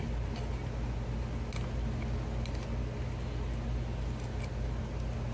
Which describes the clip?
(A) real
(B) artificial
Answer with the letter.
A